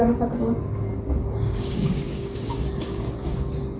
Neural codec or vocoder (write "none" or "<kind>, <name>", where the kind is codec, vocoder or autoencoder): codec, DAC